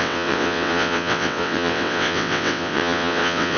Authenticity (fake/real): fake